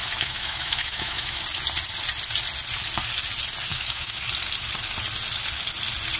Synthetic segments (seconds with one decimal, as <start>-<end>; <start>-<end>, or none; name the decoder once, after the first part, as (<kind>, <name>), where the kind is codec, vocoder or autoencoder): 0.0-1.4 (autoencoder, DAC-VAE); 3.7-4.2